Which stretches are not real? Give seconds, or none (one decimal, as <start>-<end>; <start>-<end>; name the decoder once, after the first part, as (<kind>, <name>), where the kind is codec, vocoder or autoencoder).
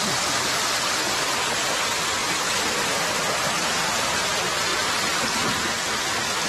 4.7-6.5 (vocoder, BigVGAN v2)